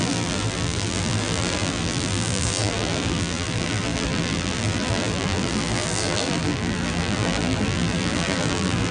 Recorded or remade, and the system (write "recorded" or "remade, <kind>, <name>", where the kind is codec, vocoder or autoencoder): remade, vocoder, BigVGAN v2